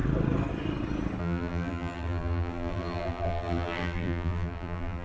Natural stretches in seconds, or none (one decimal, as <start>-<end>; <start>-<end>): 0.0-1.2